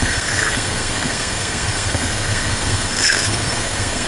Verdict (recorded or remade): remade